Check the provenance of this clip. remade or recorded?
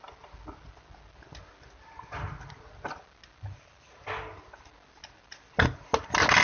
recorded